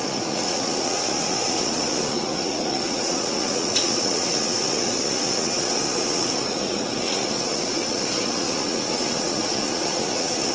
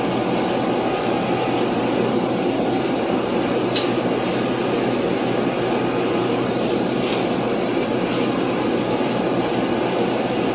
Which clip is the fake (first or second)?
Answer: first